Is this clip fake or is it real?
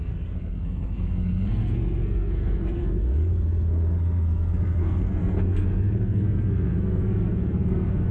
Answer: fake